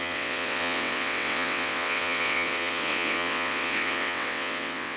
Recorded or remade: remade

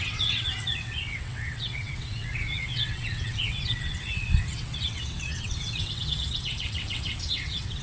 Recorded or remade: remade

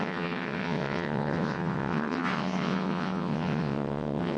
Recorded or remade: remade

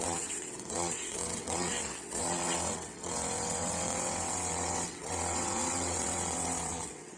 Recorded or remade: remade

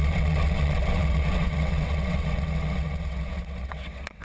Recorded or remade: remade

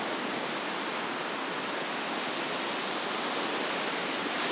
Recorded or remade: recorded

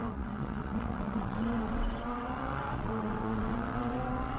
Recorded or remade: remade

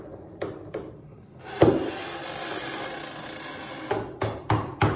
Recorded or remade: recorded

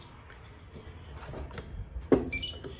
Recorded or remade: recorded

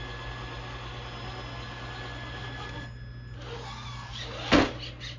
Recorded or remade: recorded